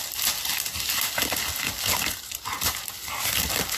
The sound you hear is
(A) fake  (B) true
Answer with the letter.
B